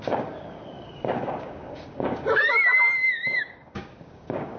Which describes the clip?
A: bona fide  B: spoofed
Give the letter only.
B